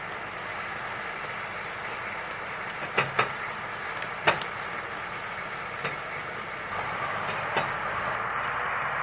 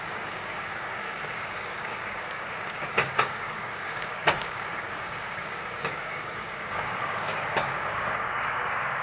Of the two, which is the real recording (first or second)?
first